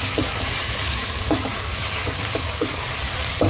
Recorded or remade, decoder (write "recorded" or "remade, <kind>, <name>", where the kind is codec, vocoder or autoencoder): remade, codec, DAC